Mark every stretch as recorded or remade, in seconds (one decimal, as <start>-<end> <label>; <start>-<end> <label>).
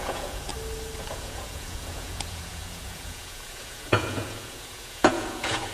0.0-0.5 remade; 0.5-1.0 recorded; 1.0-5.7 remade